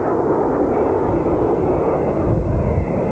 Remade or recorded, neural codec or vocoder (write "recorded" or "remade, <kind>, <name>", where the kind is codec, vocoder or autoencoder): recorded